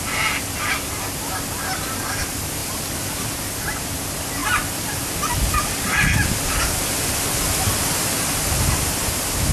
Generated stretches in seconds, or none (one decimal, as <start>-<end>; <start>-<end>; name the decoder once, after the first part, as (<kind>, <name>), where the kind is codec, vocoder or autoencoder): none

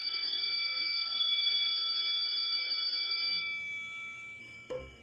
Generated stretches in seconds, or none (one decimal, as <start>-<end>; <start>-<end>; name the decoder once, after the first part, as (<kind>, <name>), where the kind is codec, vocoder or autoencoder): 0.0-1.7 (codec, SNAC); 4.4-5.0

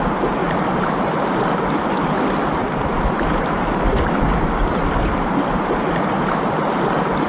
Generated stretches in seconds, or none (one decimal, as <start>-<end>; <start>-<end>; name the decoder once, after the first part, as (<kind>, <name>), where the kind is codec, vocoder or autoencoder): 0.4-1.5 (vocoder, BigVGAN v2)

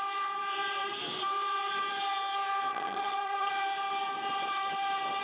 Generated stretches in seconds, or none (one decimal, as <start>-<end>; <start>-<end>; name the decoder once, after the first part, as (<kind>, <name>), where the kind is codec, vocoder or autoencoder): 2.7-3.5 (vocoder, HiFi-GAN)

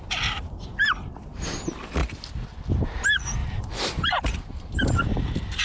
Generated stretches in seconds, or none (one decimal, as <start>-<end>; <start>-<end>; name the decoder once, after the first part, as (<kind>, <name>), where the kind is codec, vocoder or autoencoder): 3.4-5.6 (vocoder, BigVGAN v2)

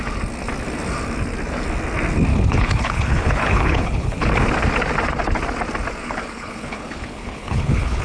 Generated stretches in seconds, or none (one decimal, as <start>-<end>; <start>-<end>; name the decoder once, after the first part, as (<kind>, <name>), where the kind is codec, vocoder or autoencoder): 2.3-4.3 (codec, HILCodec); 6.0-8.0

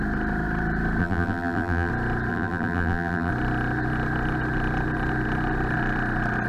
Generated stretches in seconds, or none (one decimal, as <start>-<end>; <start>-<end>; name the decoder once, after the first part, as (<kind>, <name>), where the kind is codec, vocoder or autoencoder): 1.0-1.9 (vocoder, BigVGAN v2); 2.3-3.3

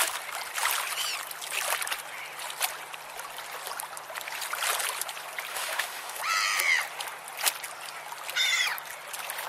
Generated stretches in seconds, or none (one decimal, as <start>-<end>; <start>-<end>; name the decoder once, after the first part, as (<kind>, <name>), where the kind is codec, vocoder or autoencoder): 5.5-6.2 (autoencoder, DAC-VAE)